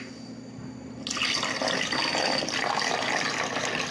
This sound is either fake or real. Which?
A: real